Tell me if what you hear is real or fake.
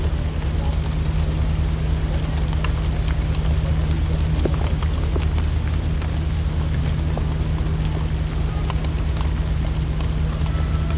real